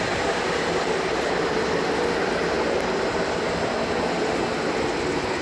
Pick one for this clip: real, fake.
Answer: real